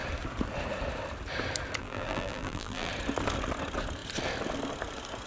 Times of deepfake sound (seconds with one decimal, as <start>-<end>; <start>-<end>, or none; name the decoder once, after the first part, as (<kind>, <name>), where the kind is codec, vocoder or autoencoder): 1.8-2.9 (vocoder, BigVGAN v2)